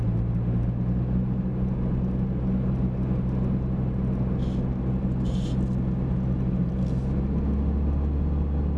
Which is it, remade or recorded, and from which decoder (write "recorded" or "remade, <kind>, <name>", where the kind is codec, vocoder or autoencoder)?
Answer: recorded